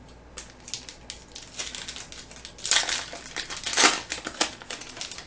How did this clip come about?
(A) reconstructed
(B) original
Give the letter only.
B